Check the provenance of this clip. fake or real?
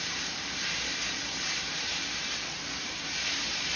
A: fake